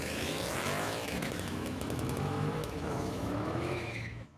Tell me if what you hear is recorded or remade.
remade